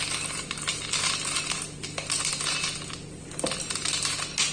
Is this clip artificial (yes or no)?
no